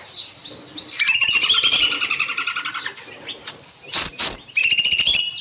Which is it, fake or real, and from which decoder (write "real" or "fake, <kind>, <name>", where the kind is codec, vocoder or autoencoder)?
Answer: real